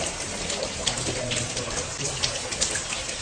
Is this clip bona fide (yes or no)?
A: yes